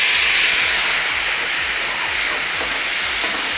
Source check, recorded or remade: recorded